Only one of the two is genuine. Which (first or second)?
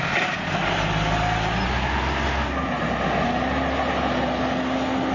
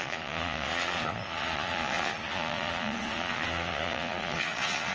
first